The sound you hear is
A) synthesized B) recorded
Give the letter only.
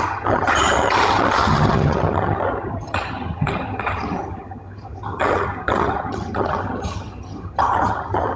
A